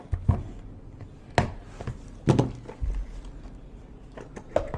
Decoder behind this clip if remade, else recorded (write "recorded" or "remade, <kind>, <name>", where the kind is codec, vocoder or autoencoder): recorded